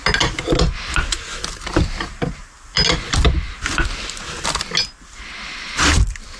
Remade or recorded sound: recorded